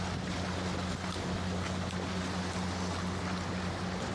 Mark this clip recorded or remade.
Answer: recorded